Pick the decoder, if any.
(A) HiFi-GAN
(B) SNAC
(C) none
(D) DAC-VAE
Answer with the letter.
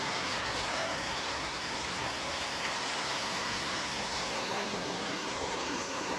B